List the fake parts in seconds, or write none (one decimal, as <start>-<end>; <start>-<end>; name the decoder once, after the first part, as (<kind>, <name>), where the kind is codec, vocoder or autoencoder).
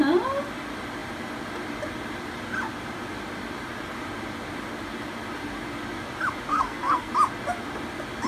6.5-7.1 (codec, SNAC)